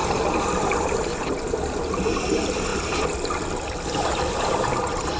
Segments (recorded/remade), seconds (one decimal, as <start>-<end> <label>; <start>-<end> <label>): 0.0-1.7 recorded; 1.7-2.7 remade; 2.7-4.2 recorded; 4.2-5.2 remade